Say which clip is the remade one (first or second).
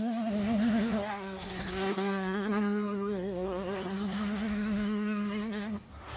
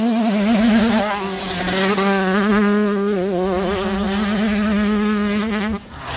first